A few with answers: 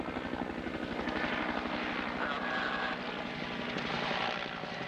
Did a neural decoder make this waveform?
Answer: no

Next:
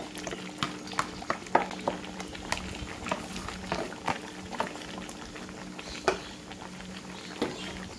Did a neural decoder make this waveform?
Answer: no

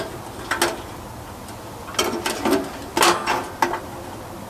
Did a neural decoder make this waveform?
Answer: no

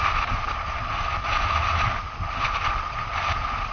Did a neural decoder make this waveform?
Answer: no